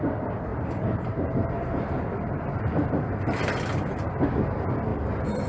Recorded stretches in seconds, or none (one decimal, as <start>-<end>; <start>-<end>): 0.0-0.5; 3.4-4.9